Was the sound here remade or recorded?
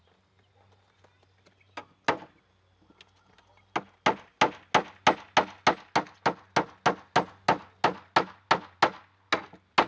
recorded